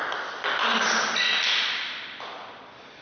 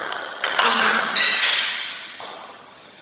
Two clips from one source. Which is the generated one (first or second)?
second